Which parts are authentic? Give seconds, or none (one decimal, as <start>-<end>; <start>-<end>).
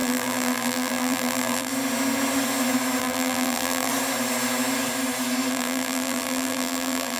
1.7-3.0; 3.9-5.5